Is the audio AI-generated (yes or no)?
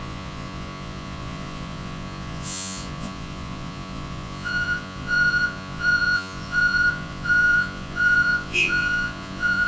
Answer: yes